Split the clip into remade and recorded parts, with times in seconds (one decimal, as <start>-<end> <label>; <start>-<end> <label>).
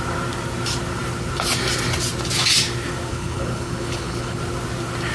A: 0.0-3.1 recorded; 3.1-4.4 remade; 4.4-5.1 recorded